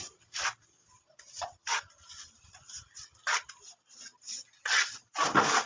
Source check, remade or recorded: recorded